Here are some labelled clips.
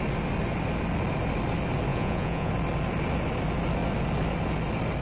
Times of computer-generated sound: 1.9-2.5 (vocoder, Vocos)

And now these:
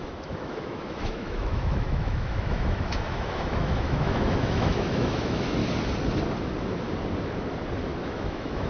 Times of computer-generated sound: 0.0-5.6 (autoencoder, DAC-VAE); 8.0-8.7

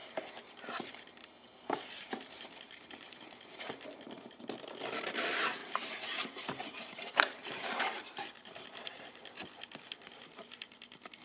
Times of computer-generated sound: 0.0-4.4 (vocoder, BigVGAN v2); 5.6-9.5

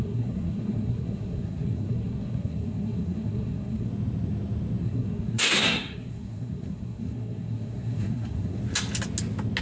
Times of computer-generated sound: 0.0-3.9 (codec, SNAC); 4.8-8.6

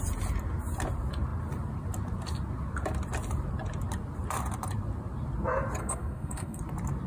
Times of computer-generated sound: 5.8-6.6 (codec, SNAC)

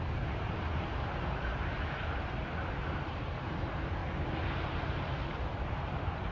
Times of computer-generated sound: 0.0-4.0 (vocoder, BigVGAN v2); 4.8-6.3